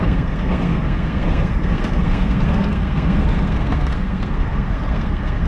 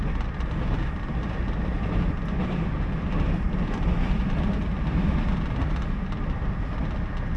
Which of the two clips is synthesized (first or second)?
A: first